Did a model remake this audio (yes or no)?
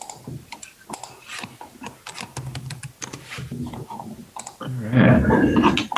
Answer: no